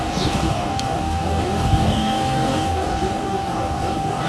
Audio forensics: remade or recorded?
remade